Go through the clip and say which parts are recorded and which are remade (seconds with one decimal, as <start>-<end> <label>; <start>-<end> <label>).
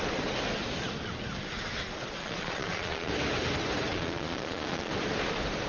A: 0.0-2.2 recorded; 2.2-3.1 remade; 3.1-3.9 recorded; 3.9-4.9 remade; 4.9-5.7 recorded